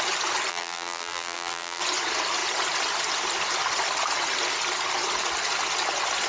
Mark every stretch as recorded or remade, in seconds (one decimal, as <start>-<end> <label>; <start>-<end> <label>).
0.0-0.5 recorded; 0.5-1.8 remade; 1.8-6.3 recorded